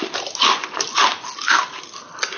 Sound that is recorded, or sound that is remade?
recorded